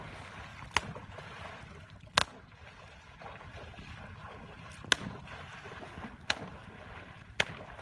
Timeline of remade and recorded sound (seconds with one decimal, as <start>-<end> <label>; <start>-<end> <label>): 0.0-0.5 recorded; 0.5-1.5 remade; 1.5-4.2 recorded; 4.2-7.0 remade; 7.0-7.8 recorded